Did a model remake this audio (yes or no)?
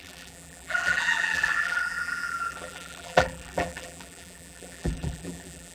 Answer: yes